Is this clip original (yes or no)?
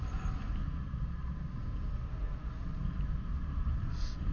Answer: yes